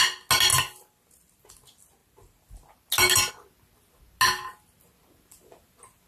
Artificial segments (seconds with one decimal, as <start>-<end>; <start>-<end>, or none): 0.5-1.0